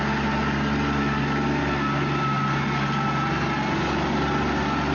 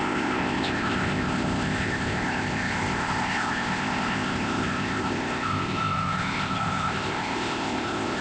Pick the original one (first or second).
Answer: first